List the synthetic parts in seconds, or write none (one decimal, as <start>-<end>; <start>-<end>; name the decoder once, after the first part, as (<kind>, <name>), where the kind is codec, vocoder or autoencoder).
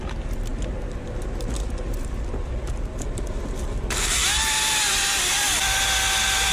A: none